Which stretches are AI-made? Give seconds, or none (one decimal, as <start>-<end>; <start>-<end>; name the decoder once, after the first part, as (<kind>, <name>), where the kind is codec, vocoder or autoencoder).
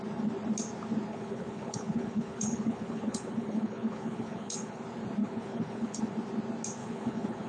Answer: 1.1-4.8 (codec, HILCodec); 5.2-6.0; 6.8-7.5